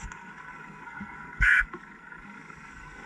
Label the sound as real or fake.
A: fake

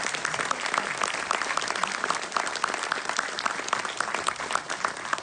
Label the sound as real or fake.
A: real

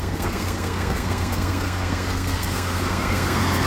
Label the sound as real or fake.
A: fake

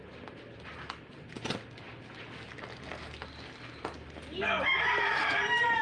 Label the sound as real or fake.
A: real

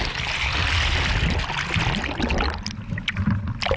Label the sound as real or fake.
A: real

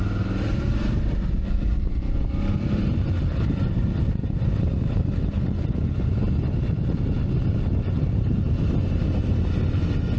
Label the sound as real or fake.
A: real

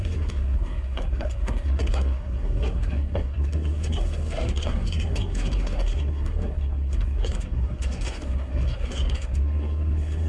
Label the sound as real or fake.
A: fake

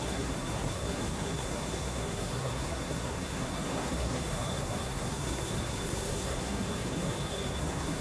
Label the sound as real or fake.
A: fake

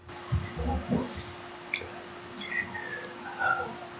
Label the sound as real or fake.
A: real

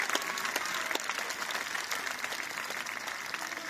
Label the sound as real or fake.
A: real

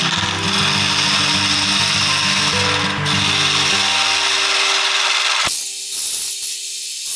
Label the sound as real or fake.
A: real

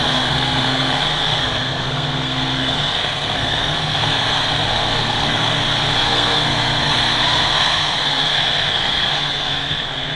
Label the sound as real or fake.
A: fake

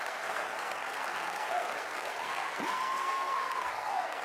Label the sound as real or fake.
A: fake